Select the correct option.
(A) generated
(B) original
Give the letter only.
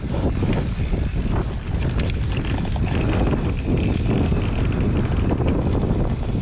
B